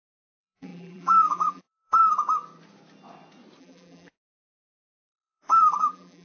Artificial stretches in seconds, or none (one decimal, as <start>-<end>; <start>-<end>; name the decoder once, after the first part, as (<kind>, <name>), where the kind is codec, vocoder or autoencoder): 0.0-2.0 (vocoder, BigVGAN v2); 3.6-6.2